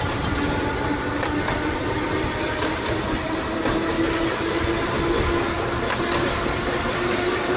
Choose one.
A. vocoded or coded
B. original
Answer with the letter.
B